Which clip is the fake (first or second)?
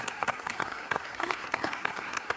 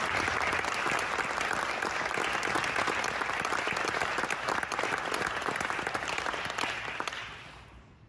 first